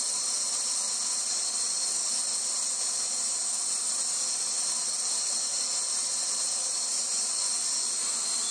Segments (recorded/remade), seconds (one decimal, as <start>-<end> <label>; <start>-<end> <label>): 0.0-6.9 recorded; 6.9-7.5 remade; 7.5-8.5 recorded